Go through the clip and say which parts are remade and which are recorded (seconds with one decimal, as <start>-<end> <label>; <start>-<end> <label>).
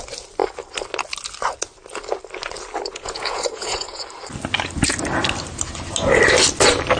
0.0-2.9 recorded; 2.9-4.0 remade; 4.0-7.0 recorded